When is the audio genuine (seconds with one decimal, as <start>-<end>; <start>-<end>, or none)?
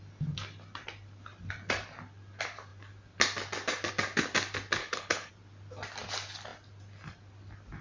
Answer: 0.0-4.8; 5.3-7.8